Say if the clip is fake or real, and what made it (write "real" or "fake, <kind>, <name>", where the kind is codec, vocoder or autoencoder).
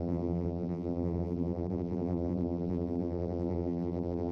fake, vocoder, BigVGAN v2